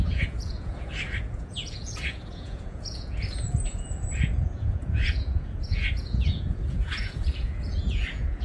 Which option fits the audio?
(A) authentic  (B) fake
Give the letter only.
B